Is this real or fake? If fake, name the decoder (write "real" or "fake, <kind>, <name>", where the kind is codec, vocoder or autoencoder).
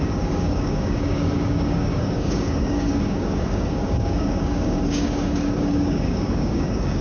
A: fake, codec, DAC